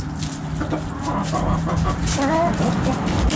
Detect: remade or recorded recorded